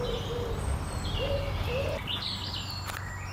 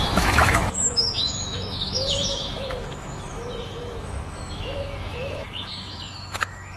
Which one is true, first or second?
first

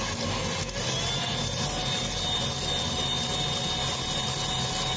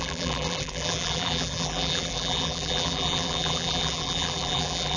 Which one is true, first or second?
first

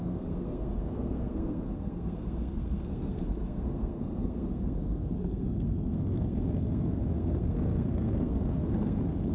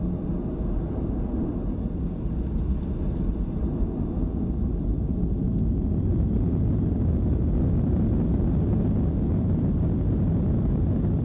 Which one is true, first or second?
second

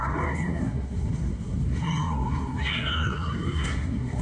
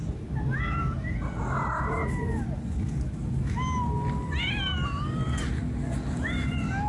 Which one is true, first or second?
second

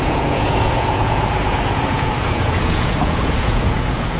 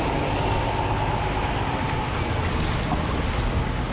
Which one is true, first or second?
second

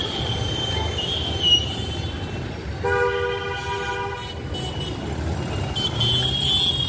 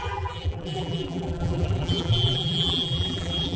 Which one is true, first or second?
first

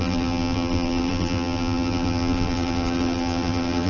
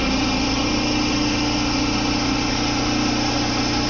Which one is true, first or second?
second